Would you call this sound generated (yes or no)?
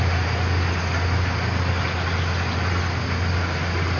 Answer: no